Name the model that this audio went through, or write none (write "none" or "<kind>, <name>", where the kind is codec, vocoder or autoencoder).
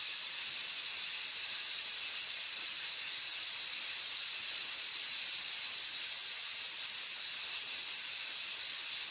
none